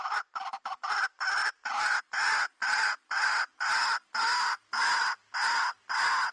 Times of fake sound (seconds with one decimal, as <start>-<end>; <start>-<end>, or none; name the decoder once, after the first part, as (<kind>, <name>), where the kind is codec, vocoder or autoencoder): none